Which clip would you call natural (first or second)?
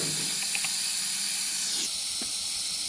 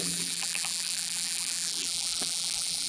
first